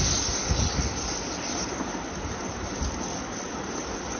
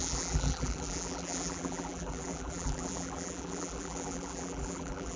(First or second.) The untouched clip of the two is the first